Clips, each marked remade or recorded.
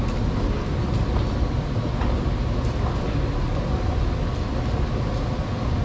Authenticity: recorded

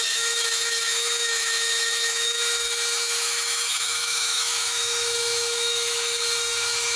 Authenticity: remade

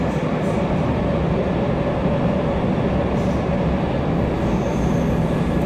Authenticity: recorded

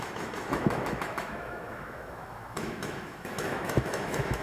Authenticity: remade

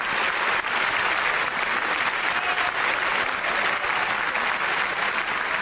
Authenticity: recorded